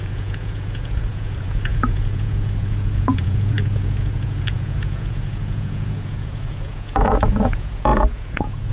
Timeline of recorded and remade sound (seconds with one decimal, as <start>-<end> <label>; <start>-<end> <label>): 0.0-8.7 remade